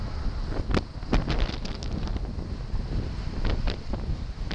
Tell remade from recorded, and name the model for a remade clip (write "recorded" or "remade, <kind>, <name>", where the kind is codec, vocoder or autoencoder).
recorded